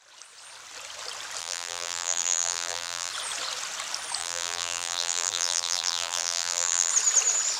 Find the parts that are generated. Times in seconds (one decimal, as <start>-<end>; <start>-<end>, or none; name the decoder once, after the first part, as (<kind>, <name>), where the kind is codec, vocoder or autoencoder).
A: 1.4-3.1 (vocoder, BigVGAN v2); 4.2-6.9